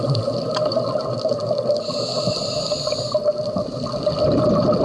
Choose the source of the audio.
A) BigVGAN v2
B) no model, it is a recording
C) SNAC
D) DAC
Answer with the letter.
B